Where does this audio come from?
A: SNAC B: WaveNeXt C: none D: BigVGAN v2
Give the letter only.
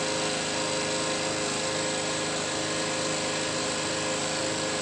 C